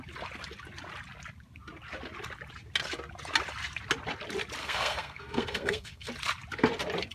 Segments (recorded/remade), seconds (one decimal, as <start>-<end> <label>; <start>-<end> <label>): 0.0-4.6 recorded; 4.6-6.1 remade; 6.1-7.1 recorded